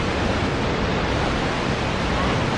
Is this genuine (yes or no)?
yes